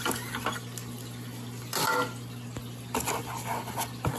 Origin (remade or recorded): recorded